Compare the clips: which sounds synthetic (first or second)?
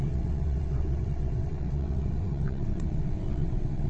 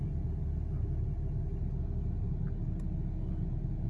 first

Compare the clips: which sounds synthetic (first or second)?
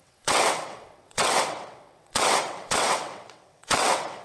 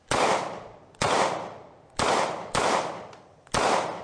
first